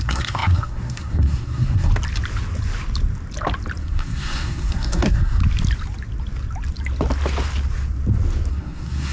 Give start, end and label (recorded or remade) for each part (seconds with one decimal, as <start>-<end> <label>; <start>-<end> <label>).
0.0-1.9 remade; 1.9-3.8 recorded; 3.8-5.4 remade; 5.4-8.5 recorded; 8.5-9.1 remade